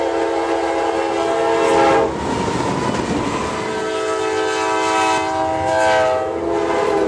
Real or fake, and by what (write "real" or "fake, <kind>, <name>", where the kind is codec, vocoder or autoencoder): real